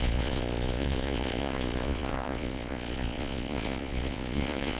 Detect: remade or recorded remade